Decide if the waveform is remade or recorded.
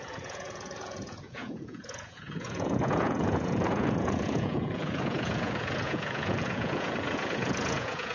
remade